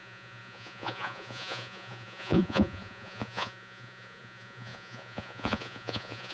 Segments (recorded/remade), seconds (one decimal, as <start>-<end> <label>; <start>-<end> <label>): 0.0-6.3 remade